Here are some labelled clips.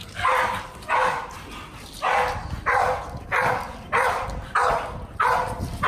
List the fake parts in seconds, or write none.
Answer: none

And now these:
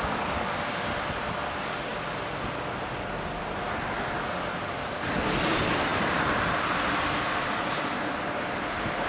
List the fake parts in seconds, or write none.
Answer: none

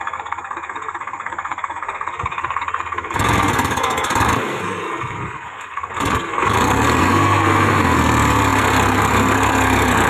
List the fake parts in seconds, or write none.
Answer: 0.0-10.1 (codec, SNAC)

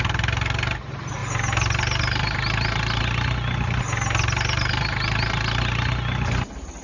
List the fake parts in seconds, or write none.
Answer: none